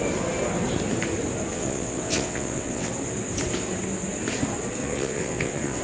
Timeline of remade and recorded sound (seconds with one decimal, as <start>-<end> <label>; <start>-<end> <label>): 0.0-1.5 recorded; 1.5-2.9 remade; 2.9-4.8 recorded; 4.8-5.8 remade